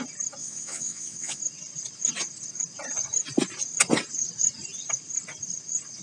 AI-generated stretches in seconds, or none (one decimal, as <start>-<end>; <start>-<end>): 0.4-1.4